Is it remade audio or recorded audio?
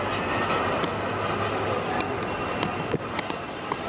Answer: recorded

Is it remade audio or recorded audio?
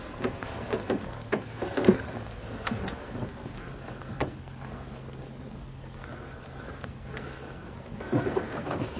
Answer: remade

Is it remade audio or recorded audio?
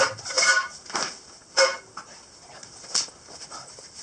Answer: recorded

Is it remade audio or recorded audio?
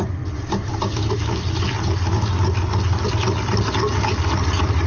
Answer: recorded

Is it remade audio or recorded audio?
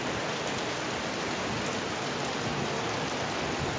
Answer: recorded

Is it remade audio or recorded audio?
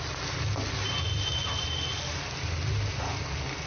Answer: recorded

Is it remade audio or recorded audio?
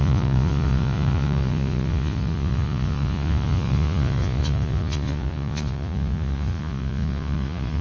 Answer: remade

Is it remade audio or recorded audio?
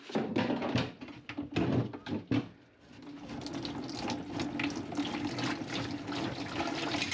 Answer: recorded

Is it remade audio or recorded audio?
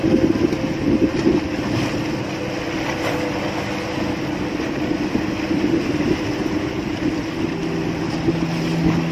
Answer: recorded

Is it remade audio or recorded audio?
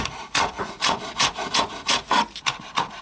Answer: remade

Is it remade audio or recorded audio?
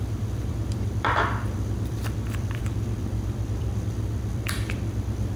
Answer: remade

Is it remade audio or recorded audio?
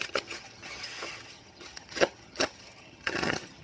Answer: remade